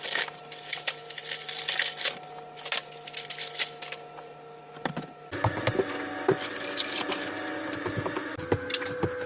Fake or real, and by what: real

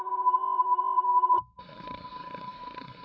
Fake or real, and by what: fake, codec, SNAC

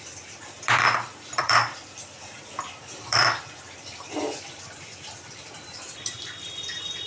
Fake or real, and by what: fake, vocoder, BigVGAN v2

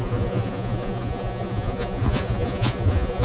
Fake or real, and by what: fake, vocoder, Vocos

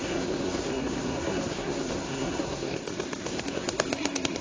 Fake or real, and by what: fake, codec, SNAC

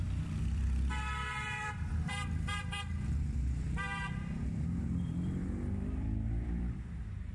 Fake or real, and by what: fake, vocoder, BigVGAN v2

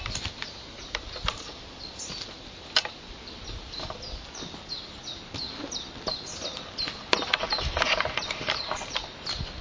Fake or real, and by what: real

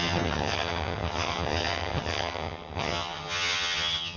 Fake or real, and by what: fake, vocoder, HiFi-GAN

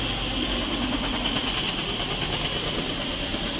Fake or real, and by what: real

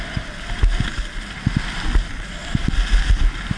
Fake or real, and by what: real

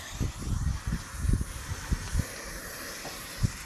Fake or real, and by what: real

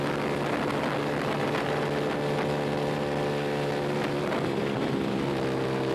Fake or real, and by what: real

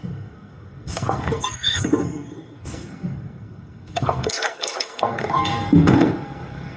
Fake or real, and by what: fake, codec, SNAC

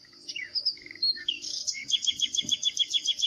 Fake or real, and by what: fake, codec, DAC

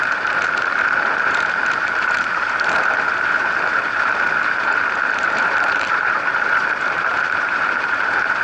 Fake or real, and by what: fake, vocoder, BigVGAN v2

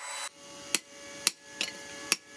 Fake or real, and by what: real